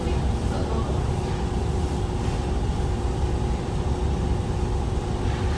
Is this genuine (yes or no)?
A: yes